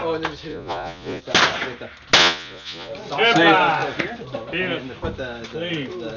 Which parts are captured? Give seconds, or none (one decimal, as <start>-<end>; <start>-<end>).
0.0-0.5; 1.2-2.2; 2.9-6.2